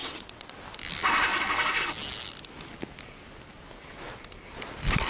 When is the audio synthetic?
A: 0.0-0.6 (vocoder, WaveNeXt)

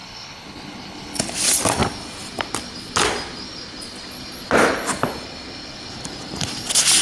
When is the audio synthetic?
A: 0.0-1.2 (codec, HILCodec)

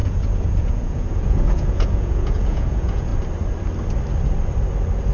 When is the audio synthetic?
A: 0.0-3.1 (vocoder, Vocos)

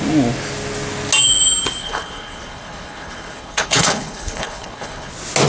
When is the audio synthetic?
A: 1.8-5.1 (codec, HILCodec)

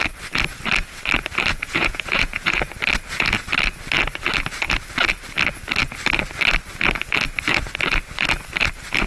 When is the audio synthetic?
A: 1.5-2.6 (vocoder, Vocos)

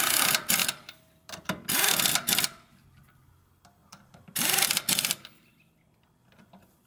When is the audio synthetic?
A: 0.6-2.1 (vocoder, BigVGAN v2); 3.8-6.2

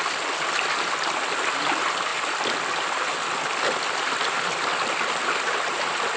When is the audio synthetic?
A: none

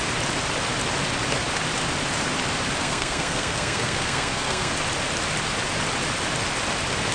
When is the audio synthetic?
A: 2.8-4.7 (codec, SNAC)